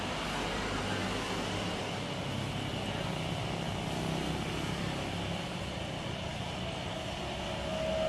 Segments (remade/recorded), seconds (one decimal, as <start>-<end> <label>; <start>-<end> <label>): 0.0-8.1 recorded